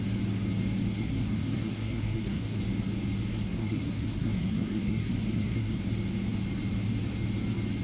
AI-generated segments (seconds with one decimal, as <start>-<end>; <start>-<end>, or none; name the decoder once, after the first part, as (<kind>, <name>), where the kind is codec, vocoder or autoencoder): 0.9-2.6 (codec, SNAC); 3.3-5.8